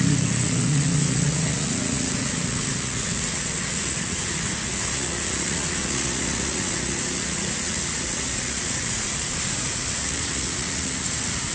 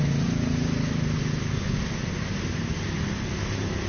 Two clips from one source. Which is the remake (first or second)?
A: first